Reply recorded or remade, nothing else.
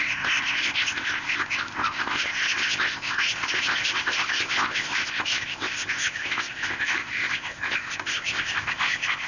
remade